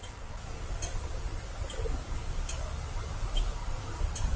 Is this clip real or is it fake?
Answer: real